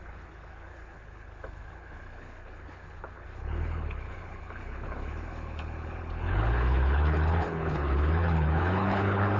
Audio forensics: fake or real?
fake